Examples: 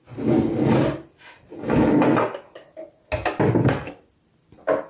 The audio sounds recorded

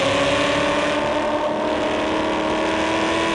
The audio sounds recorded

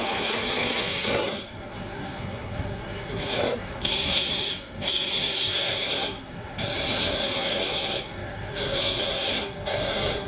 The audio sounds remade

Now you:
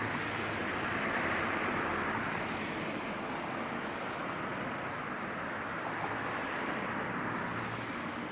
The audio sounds recorded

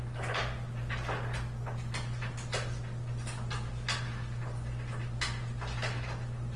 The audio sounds recorded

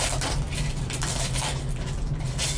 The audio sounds recorded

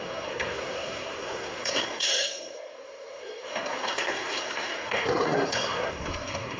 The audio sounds remade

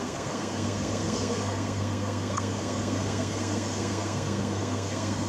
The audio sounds remade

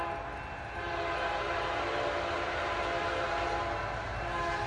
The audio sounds recorded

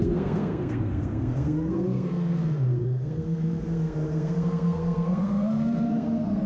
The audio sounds remade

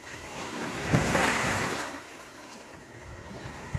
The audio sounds remade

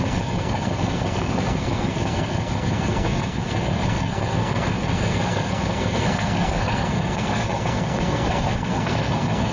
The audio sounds remade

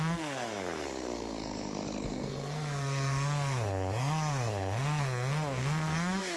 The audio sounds remade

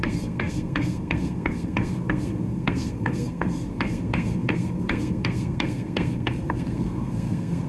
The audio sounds remade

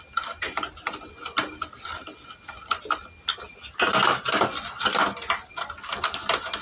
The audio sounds recorded